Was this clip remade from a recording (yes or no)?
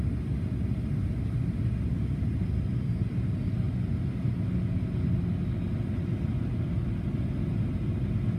no